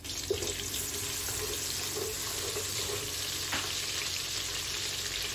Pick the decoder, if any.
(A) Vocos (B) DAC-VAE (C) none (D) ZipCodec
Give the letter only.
C